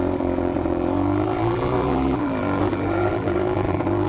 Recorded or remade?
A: remade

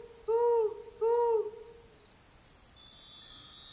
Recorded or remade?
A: recorded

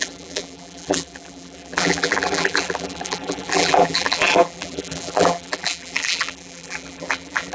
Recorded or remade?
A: remade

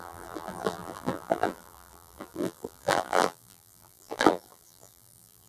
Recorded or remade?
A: remade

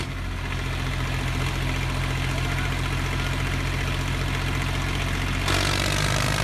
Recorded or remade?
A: recorded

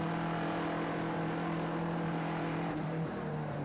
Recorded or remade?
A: remade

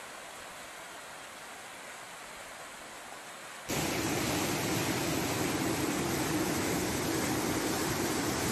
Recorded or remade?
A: recorded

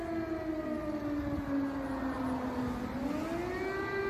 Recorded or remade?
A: recorded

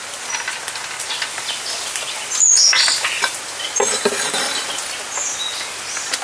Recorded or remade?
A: recorded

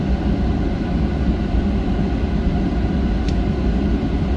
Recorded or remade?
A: recorded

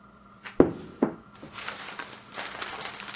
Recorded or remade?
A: remade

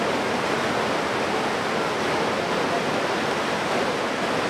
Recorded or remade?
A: recorded